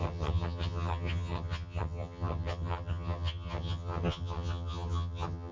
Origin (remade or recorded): remade